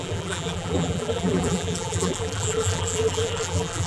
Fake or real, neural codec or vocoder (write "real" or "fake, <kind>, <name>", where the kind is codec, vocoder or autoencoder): fake, vocoder, BigVGAN v2